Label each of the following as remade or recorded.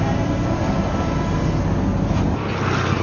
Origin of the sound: recorded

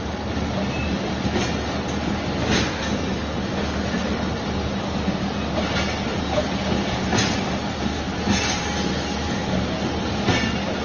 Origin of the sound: recorded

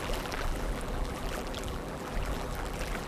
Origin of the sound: remade